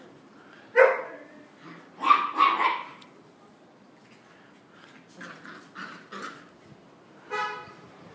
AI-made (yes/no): no